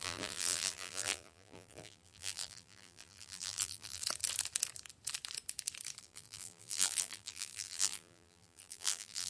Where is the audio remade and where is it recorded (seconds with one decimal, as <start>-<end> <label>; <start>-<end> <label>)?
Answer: 0.0-4.0 remade; 4.0-6.0 recorded; 6.0-9.3 remade